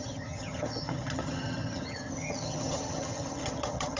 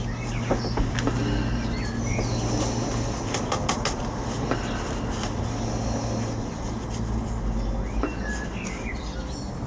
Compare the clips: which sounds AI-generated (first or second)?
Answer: first